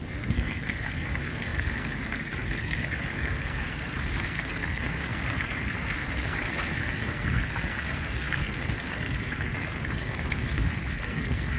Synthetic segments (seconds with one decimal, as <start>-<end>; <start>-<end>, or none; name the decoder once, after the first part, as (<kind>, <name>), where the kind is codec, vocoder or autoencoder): 0.0-11.6 (codec, SNAC)